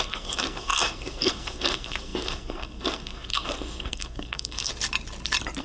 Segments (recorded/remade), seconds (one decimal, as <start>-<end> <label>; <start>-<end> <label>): 0.0-4.7 remade; 4.7-5.6 recorded